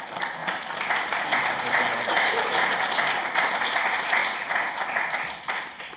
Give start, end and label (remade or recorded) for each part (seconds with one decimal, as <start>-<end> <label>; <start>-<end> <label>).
0.0-6.0 recorded